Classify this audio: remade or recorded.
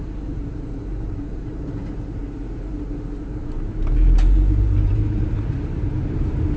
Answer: remade